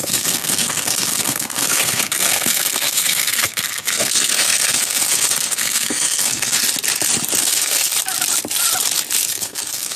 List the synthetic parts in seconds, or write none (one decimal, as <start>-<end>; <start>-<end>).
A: 0.0-6.6; 7.4-7.9; 9.3-10.0